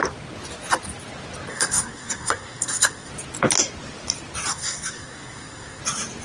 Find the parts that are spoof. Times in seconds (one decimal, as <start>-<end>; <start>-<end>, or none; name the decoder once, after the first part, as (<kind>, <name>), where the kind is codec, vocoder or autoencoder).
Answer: 1.5-3.1 (codec, SNAC); 4.5-5.8

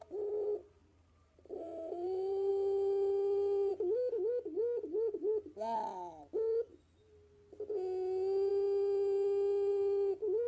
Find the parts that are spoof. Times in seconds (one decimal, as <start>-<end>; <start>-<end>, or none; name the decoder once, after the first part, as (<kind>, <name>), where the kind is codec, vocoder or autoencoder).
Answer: 0.8-2.5 (vocoder, BigVGAN v2)

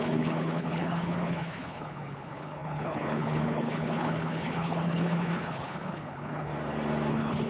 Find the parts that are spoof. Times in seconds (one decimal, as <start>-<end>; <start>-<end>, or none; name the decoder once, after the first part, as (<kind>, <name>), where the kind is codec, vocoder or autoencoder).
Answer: 0.0-6.5 (codec, HILCodec); 7.1-7.5

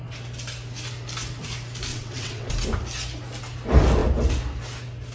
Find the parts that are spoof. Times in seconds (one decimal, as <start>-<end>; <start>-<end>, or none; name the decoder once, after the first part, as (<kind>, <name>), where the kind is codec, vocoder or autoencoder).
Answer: 1.9-2.5 (vocoder, WaveNeXt)

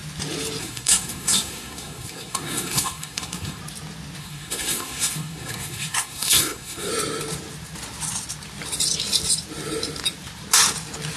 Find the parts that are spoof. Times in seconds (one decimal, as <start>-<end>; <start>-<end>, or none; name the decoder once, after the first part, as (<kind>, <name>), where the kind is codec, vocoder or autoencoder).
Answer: 0.6-3.6 (codec, SNAC); 4.2-6.9

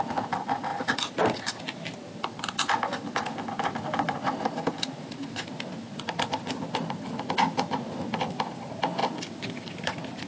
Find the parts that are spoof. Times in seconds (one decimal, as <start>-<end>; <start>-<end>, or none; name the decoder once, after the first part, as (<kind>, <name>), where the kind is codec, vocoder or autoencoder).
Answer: none

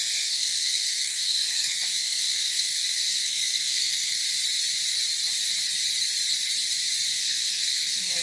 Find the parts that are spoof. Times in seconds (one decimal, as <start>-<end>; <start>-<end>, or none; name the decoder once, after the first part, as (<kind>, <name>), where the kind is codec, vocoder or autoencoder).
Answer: 0.0-4.2 (codec, SNAC); 7.1-8.2

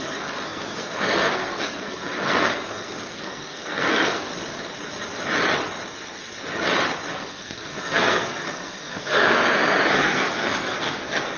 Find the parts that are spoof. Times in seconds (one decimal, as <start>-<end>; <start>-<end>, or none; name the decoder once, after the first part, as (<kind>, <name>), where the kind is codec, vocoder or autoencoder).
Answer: 0.0-4.3 (codec, SNAC); 7.1-9.4; 9.9-11.4